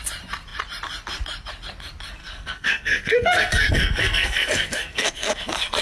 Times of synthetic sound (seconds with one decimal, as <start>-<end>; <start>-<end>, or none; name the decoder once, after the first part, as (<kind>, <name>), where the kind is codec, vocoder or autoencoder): 2.2-5.8 (codec, SNAC)